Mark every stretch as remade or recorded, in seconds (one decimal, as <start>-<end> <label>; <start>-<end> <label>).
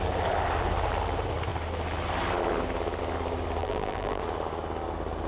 0.0-3.6 recorded; 3.6-4.2 remade; 4.2-5.3 recorded